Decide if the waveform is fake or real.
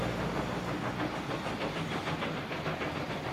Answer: real